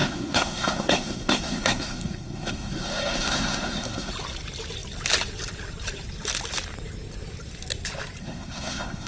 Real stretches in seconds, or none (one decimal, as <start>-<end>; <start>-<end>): 4.1-8.2